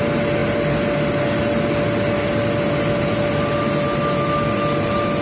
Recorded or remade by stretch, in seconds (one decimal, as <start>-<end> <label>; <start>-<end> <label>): 0.0-5.2 recorded